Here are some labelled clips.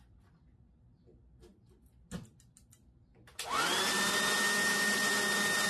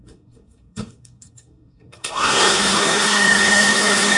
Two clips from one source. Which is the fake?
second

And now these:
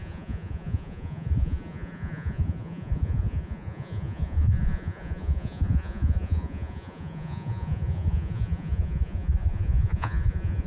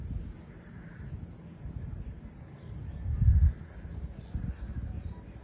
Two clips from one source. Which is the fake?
first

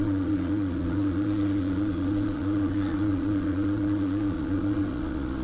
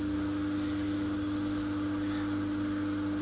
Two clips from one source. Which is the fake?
first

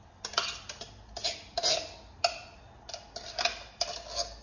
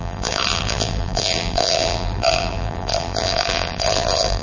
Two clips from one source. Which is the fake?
second